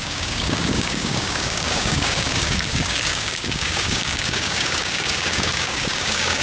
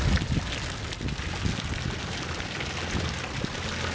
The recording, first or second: second